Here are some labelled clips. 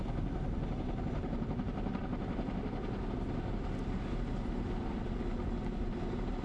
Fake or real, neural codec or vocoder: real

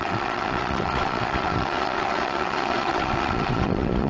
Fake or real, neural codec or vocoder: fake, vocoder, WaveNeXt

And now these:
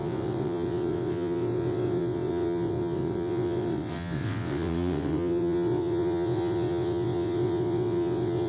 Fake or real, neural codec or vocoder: fake, vocoder, WaveNeXt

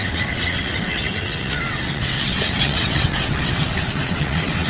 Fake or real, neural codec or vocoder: fake, vocoder, WaveNeXt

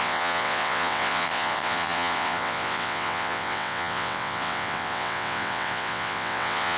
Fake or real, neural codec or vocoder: fake, vocoder, WaveNeXt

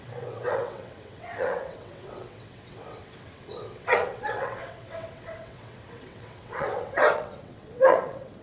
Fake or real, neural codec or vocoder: fake, vocoder, WaveNeXt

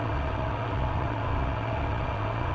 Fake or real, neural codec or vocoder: fake, vocoder, WaveNeXt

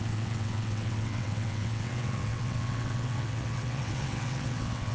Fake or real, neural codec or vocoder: fake, vocoder, WaveNeXt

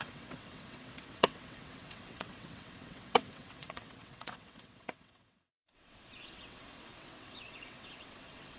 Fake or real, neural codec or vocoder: fake, vocoder, WaveNeXt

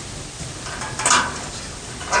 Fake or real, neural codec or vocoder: real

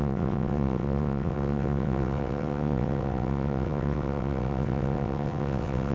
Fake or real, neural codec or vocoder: fake, vocoder, WaveNeXt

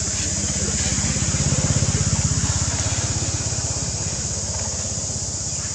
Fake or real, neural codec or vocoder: real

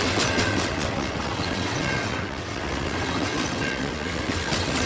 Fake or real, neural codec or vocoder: fake, vocoder, WaveNeXt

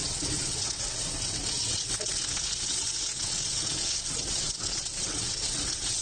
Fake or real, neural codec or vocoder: fake, vocoder, WaveNeXt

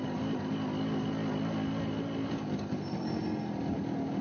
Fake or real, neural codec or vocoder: real